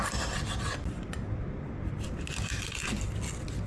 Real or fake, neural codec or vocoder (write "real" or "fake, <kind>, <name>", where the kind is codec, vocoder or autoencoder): real